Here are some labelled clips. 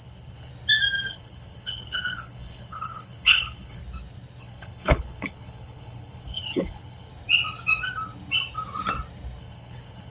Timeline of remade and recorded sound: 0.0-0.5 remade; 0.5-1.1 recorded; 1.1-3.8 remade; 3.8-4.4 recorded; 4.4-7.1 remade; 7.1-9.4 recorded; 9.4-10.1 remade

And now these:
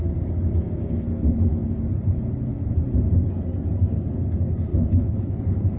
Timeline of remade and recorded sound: 0.0-4.7 recorded; 4.7-5.8 remade